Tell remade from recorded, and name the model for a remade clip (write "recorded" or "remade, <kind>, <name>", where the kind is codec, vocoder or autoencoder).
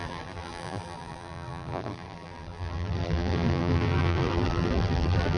remade, vocoder, BigVGAN v2